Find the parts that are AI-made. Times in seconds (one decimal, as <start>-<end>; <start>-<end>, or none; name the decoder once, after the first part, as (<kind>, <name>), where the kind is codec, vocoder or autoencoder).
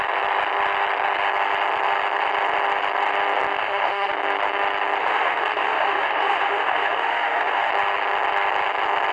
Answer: 3.6-4.1 (autoencoder, DAC-VAE); 5.0-7.7